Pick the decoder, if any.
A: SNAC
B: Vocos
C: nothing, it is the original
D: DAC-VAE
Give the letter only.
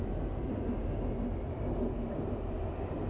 C